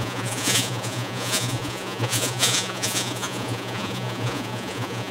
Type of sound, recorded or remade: remade